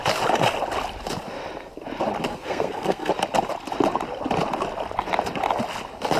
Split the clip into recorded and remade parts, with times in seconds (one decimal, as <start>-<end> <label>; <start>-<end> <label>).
0.0-2.3 recorded; 2.3-3.1 remade; 3.1-6.2 recorded